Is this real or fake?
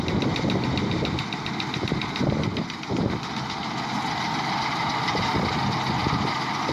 real